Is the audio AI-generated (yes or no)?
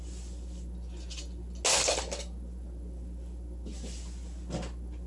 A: no